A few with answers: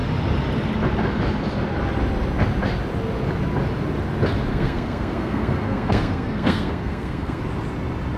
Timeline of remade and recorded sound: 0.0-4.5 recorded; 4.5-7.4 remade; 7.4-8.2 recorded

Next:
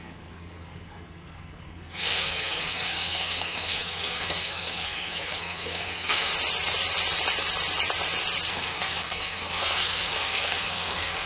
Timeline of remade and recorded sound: 0.0-6.3 remade; 6.3-8.5 recorded; 8.5-11.3 remade

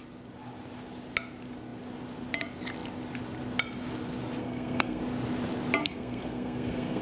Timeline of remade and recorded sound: 0.0-4.4 recorded; 4.4-5.0 remade; 5.0-5.8 recorded; 5.8-7.0 remade